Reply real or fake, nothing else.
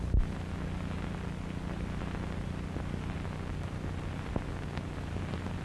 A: real